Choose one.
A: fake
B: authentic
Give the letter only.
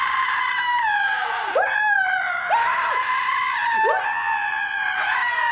A